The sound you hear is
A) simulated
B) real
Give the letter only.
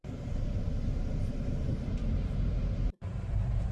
A